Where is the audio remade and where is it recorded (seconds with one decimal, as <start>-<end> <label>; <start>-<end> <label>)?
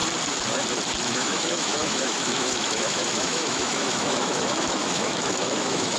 0.0-1.0 recorded; 1.0-6.0 remade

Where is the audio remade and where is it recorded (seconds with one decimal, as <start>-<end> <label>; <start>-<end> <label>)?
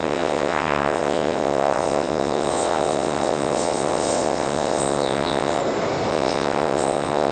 0.0-5.6 remade; 5.6-6.1 recorded; 6.1-7.3 remade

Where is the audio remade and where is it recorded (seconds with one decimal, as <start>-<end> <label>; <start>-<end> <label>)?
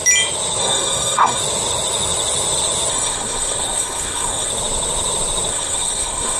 0.0-0.6 recorded; 0.6-1.4 remade; 1.4-2.9 recorded; 2.9-4.5 remade; 4.5-5.5 recorded; 5.5-6.4 remade